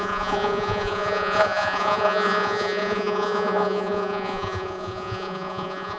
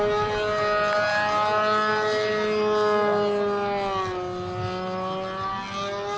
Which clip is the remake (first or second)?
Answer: first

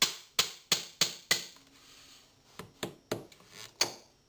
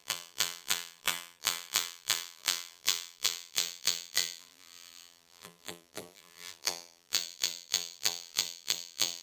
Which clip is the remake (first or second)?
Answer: second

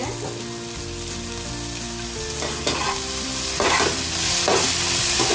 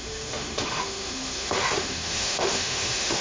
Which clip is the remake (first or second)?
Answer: second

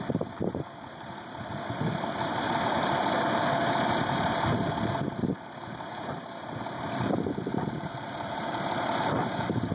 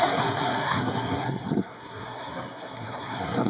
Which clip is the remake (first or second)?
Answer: second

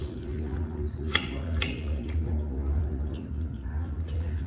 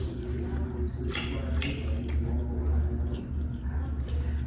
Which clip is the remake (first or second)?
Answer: first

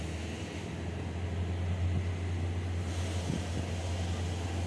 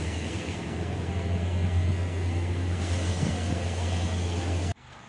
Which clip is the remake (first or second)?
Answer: second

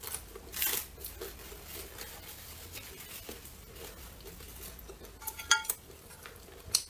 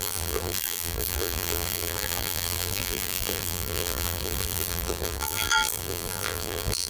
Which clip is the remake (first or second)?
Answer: second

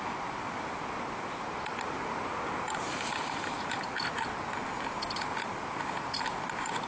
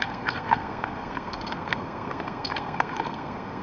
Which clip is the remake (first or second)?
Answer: second